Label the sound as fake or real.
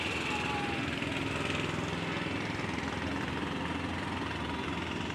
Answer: real